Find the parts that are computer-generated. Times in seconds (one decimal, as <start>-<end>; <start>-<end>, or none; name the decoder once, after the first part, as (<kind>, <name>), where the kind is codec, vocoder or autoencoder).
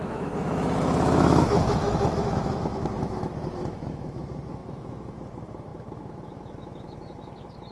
0.0-7.7 (autoencoder, DAC-VAE)